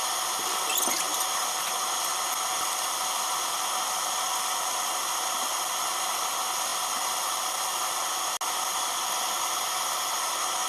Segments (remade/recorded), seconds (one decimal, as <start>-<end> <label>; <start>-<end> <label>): 0.0-10.7 recorded